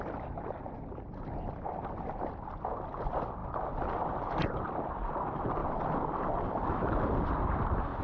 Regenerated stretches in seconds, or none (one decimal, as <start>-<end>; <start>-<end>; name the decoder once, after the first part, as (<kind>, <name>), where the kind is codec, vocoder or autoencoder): 5.6-8.0 (vocoder, BigVGAN v2)